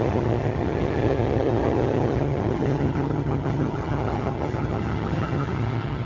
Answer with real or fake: fake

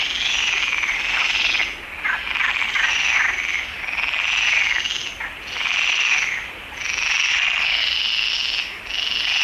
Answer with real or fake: real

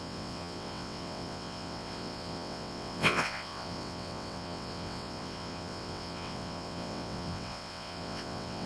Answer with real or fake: fake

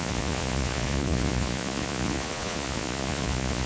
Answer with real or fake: fake